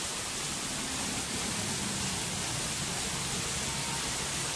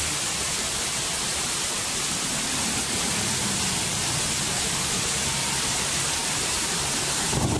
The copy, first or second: second